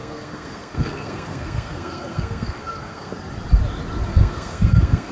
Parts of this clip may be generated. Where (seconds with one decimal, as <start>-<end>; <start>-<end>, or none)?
0.0-3.1; 4.1-5.1